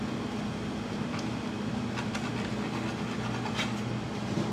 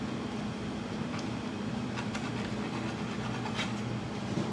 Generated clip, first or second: second